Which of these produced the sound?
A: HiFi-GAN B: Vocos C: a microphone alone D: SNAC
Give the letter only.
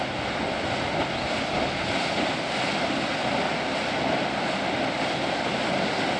C